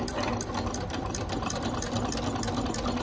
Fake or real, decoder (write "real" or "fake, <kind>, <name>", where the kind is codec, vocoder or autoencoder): real